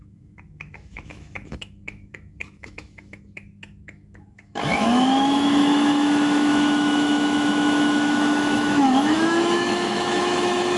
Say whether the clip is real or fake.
fake